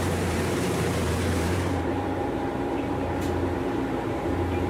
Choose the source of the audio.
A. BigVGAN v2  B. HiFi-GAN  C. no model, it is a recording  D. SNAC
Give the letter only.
A